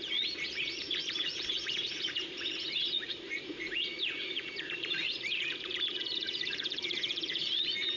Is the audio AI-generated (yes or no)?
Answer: yes